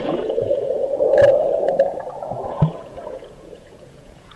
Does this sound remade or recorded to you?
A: remade